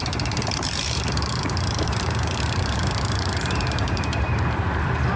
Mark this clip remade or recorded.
remade